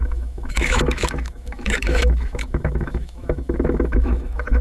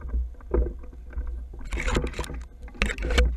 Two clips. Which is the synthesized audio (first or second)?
first